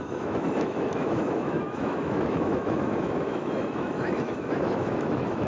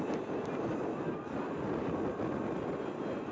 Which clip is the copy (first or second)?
first